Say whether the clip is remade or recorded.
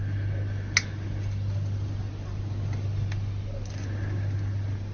recorded